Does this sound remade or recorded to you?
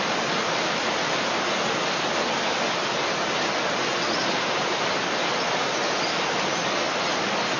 recorded